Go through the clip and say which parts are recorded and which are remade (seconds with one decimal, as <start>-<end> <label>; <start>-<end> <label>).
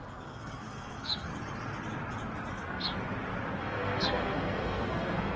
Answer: 0.0-1.3 remade; 1.3-2.5 recorded; 2.5-2.9 remade; 2.9-3.6 recorded; 3.6-5.4 remade